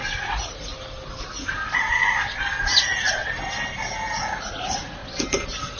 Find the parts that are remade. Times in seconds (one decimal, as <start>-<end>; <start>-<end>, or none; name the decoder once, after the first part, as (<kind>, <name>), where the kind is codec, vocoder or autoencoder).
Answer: 0.0-0.7 (vocoder, Vocos); 2.6-3.2; 4.2-5.0